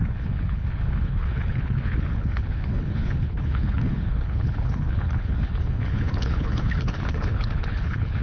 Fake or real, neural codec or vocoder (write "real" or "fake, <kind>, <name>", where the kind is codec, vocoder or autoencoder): fake, codec, HILCodec